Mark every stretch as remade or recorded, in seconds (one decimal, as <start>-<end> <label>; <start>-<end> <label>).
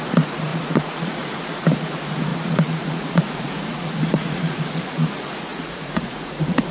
0.0-6.7 remade